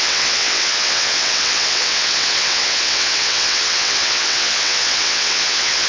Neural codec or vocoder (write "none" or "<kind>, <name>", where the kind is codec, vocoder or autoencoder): vocoder, WaveNeXt